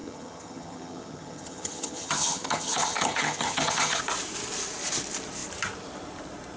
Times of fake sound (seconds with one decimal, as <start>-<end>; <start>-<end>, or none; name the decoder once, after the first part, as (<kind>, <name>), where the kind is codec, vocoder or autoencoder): 0.0-4.0 (vocoder, HiFi-GAN)